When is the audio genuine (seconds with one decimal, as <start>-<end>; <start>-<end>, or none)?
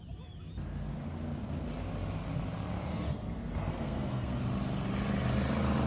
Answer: 0.0-2.9; 4.4-5.9